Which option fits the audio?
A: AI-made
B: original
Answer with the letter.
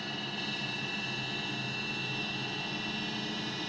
B